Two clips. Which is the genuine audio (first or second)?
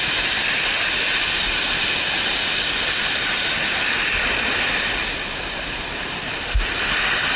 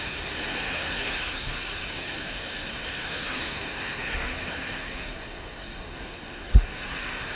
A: first